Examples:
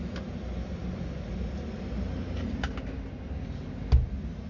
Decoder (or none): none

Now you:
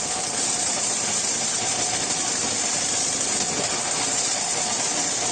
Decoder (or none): none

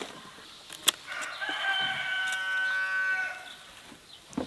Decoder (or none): none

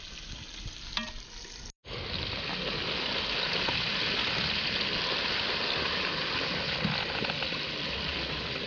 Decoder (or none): none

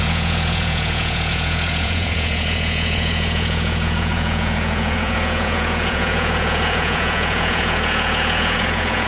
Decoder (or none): vocoder, Vocos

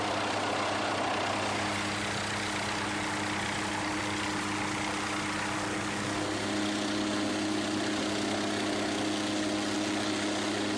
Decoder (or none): none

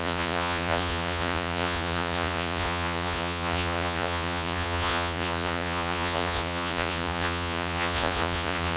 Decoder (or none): vocoder, Vocos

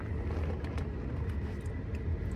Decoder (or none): none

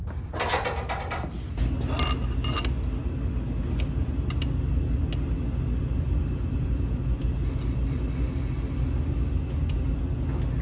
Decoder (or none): none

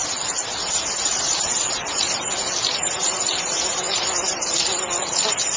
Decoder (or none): none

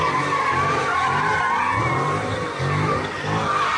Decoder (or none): none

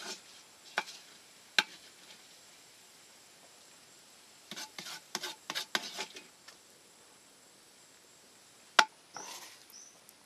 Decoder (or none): none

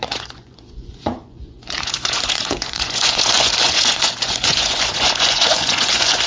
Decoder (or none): vocoder, Vocos